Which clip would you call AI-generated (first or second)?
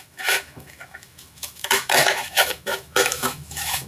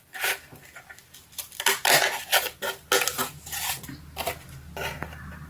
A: first